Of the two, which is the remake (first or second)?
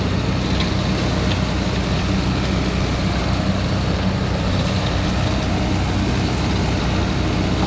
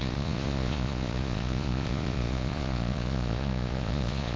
second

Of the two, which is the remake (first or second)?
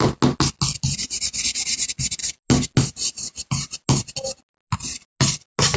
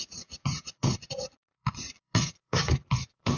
second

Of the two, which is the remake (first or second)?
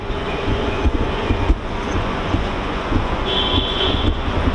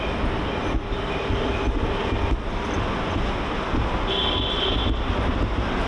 first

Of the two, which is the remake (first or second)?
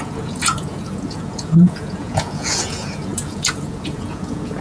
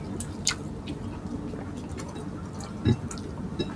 first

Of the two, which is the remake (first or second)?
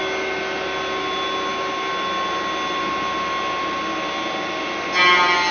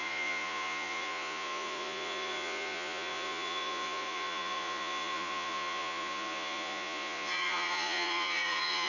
second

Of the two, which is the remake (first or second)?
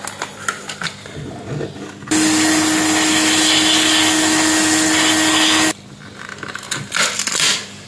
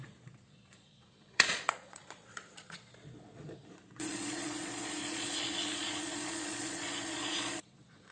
second